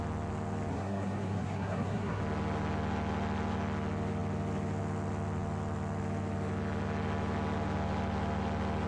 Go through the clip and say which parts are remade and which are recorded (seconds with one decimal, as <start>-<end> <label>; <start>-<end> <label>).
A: 0.0-0.7 recorded; 0.7-2.2 remade; 2.2-8.9 recorded